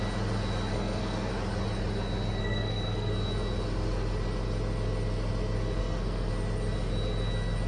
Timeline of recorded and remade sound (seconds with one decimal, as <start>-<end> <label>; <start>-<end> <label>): 0.0-0.7 recorded; 0.7-1.3 remade; 1.3-2.4 recorded; 2.4-3.1 remade; 3.1-5.8 recorded; 5.8-6.3 remade; 6.3-7.7 recorded